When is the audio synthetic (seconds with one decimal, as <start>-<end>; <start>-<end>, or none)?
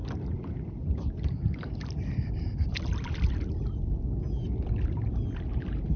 none